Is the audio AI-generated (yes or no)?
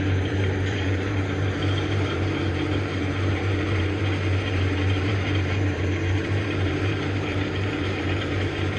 yes